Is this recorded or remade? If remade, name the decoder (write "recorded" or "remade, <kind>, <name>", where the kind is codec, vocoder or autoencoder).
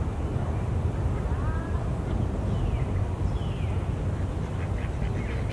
recorded